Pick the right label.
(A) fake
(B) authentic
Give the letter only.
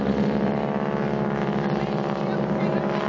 B